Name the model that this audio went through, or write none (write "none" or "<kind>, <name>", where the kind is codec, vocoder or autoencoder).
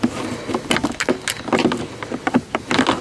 none